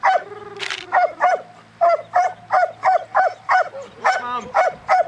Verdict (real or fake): real